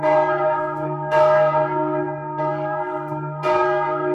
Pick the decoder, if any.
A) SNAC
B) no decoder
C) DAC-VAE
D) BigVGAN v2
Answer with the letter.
A